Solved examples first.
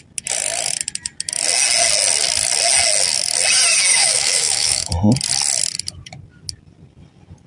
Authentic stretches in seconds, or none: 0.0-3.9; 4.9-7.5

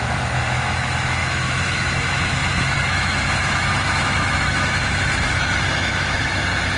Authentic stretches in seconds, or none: none

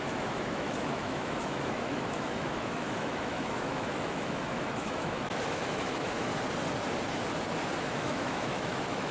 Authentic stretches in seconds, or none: 6.3-7.8

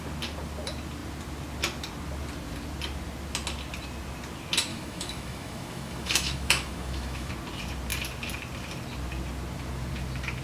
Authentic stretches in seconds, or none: 0.0-4.7; 7.3-10.4

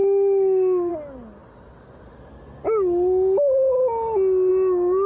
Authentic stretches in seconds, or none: 0.9-5.1